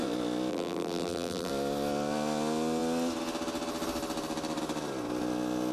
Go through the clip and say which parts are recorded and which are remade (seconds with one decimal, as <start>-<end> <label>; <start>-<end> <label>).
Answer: 0.0-0.5 recorded; 0.5-1.5 remade; 1.5-5.7 recorded